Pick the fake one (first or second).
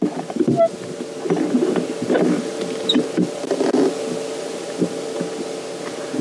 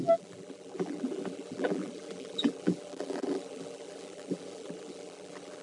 second